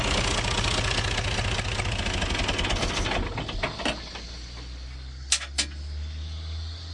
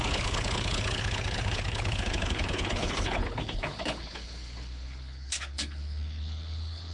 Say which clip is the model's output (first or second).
second